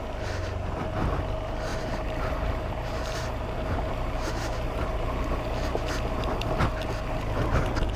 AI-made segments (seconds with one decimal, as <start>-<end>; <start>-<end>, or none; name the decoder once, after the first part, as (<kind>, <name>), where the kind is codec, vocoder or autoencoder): 1.7-4.3 (vocoder, BigVGAN v2)

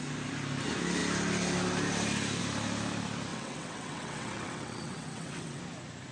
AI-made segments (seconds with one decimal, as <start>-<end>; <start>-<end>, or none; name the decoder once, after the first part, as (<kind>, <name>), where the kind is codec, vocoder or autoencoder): 3.3-5.6 (vocoder, WaveNeXt)

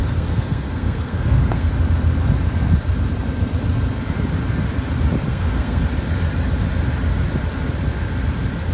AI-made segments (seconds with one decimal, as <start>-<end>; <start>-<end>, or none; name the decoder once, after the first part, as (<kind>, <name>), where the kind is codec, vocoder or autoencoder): 0.0-1.7 (codec, SNAC); 5.3-5.8

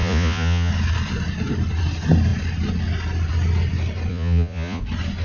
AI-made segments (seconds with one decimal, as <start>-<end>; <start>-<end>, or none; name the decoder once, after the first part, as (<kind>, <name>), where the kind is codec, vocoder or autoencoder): 0.0-0.7 (vocoder, Vocos); 4.1-4.8